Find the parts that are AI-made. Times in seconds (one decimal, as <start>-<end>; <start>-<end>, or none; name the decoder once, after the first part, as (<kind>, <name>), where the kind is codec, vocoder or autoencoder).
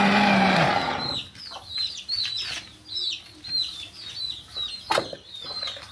none